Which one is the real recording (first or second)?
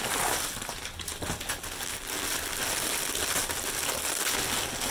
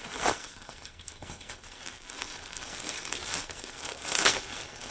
first